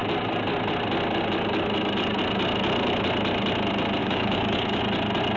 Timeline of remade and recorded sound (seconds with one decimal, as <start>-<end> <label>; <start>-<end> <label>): 0.0-4.0 recorded; 4.0-4.8 remade; 4.8-5.4 recorded

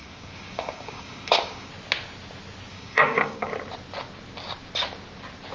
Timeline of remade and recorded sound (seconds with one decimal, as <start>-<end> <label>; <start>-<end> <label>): 0.0-1.7 remade; 1.7-2.7 recorded; 2.7-3.5 remade; 3.5-5.5 recorded

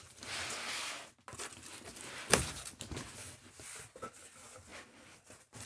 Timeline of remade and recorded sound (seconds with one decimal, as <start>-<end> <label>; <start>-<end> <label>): 0.0-5.7 recorded

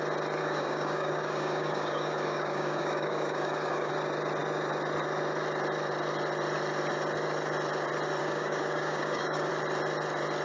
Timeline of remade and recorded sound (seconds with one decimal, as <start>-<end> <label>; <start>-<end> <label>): 0.0-0.4 recorded; 0.4-3.9 remade; 3.9-8.2 recorded; 8.2-9.5 remade; 9.5-10.4 recorded